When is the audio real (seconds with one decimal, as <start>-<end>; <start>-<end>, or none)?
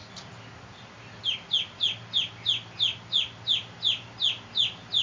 0.0-5.0